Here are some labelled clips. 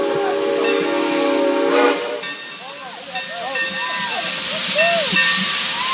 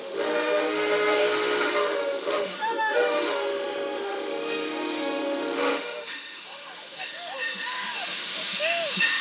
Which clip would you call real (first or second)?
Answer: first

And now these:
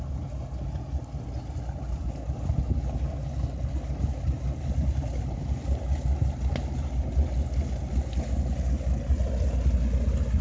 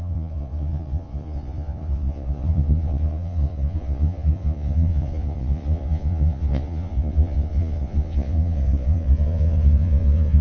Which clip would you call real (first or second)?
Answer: first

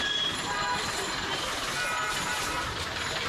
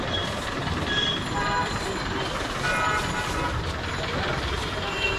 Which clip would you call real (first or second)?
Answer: second